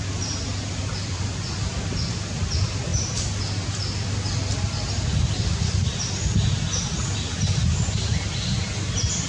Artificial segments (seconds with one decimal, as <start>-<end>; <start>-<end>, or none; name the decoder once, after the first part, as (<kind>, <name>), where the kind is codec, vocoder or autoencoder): none